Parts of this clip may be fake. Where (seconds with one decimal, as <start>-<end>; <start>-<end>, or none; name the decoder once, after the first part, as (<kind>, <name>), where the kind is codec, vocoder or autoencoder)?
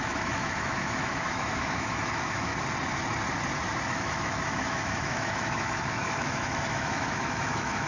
0.0-2.5 (autoencoder, DAC-VAE); 3.9-7.9